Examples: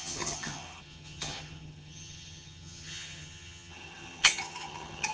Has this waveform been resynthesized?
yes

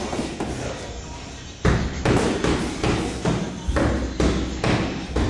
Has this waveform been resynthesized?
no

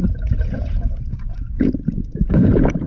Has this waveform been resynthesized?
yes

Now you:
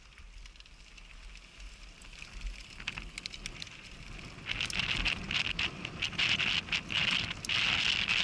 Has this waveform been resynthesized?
no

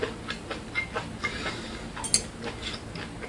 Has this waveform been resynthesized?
no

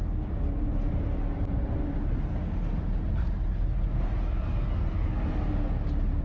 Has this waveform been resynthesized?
no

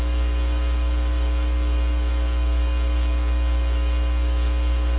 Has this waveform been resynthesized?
yes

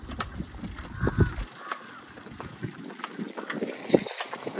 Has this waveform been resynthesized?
no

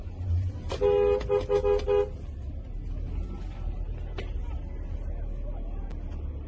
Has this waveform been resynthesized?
no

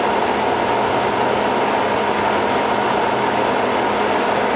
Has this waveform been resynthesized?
no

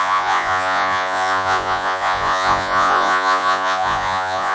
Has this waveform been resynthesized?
yes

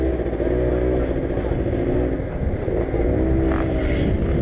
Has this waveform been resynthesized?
no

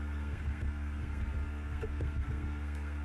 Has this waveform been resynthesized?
yes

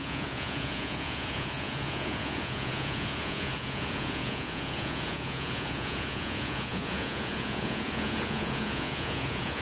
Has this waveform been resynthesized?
yes